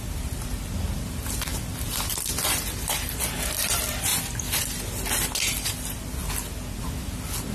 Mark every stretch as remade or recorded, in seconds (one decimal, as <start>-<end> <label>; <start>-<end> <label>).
0.0-6.2 remade; 6.2-6.8 recorded; 6.8-7.5 remade